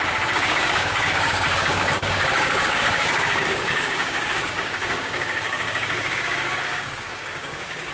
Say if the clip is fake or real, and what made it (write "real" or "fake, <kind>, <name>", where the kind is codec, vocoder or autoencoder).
fake, codec, DAC